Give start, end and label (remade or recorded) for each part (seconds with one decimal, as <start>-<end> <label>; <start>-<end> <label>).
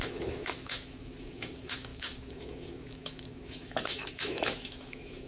0.0-5.3 remade